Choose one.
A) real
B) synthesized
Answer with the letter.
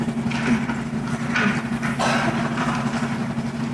B